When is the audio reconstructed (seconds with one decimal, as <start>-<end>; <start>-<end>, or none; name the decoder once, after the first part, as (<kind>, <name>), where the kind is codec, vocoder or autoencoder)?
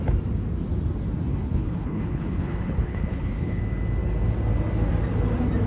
1.3-3.6 (codec, HILCodec)